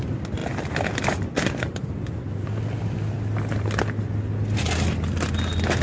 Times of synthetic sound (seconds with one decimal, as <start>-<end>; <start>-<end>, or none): none